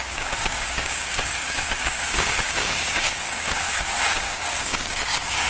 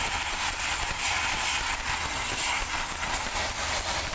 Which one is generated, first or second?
first